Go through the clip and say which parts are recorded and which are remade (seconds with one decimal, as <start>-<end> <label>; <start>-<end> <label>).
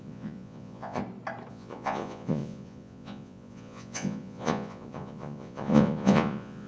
0.0-1.0 remade; 1.0-1.5 recorded; 1.5-6.7 remade